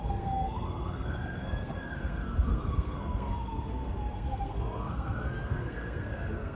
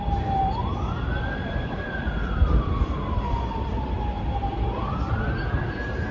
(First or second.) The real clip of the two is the second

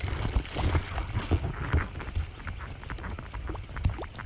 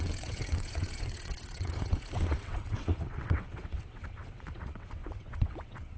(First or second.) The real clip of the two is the first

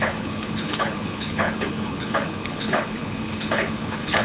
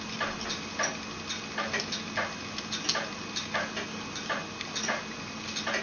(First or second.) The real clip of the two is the second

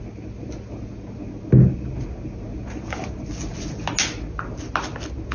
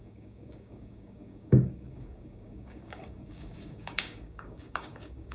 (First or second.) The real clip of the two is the first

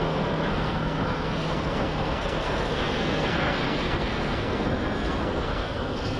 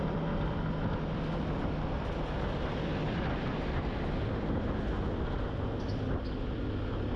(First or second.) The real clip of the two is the second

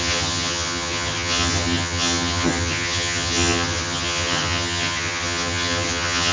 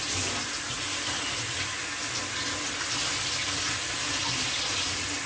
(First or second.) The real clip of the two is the second